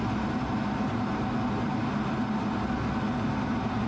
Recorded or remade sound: recorded